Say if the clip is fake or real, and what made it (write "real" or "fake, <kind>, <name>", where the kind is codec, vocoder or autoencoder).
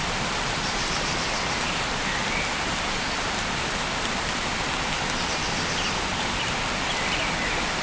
real